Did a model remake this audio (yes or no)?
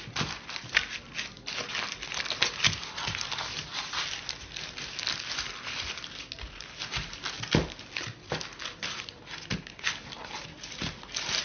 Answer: no